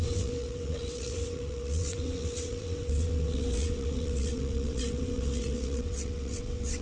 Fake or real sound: fake